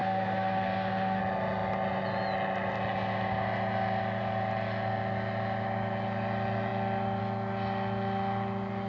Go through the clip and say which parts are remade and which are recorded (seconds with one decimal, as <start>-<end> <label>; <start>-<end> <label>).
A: 0.0-1.2 remade; 1.2-8.9 recorded